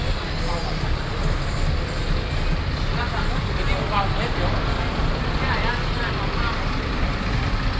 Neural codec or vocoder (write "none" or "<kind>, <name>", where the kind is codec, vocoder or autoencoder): none